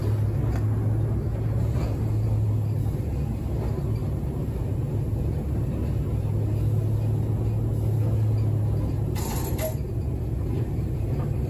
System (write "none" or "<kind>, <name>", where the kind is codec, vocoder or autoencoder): none